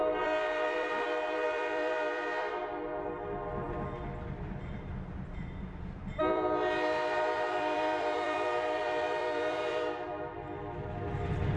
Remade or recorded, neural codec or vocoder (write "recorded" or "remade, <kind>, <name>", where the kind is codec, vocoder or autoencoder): remade, vocoder, BigVGAN v2